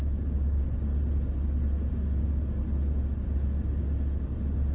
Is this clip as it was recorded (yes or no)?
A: yes